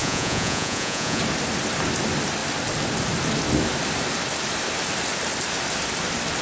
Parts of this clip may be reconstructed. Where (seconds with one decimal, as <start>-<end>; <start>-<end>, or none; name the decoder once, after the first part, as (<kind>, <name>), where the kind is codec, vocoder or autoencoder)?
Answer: 0.0-1.2 (vocoder, Vocos)